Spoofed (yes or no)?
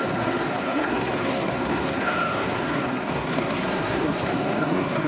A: yes